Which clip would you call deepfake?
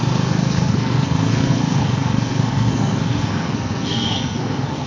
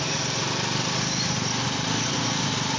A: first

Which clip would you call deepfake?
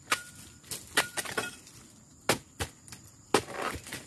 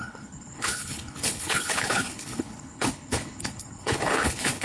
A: second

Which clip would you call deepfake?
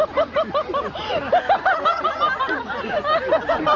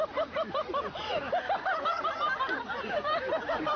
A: second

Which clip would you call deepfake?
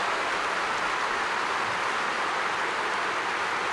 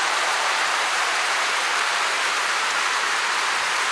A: second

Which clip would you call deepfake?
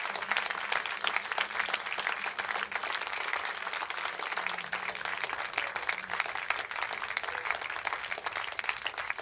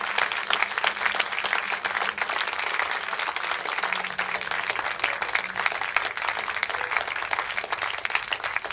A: first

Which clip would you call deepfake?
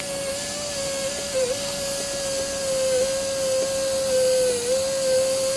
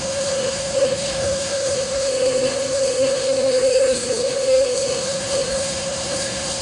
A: second